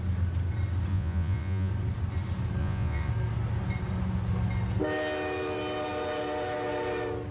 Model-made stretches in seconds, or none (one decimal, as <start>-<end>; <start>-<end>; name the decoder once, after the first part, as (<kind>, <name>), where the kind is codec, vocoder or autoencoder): 0.9-1.7 (vocoder, Vocos); 2.6-3.1